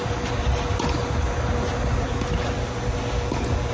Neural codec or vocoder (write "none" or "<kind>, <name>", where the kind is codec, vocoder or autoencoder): none